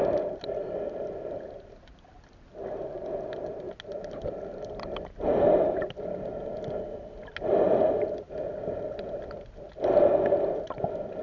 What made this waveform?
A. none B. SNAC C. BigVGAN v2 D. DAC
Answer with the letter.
A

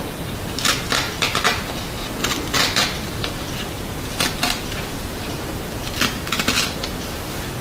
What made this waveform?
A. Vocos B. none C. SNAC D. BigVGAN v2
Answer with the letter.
B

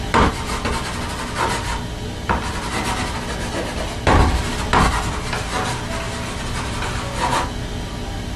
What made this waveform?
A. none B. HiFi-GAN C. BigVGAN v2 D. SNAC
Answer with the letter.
A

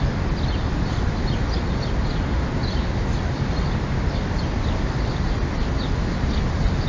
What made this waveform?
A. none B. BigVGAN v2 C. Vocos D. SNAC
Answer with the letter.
A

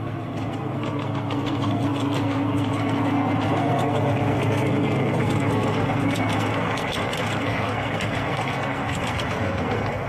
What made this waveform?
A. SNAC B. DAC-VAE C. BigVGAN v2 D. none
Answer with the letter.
A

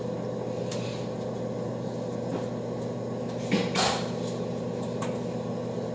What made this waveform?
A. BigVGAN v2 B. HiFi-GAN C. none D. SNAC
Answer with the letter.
C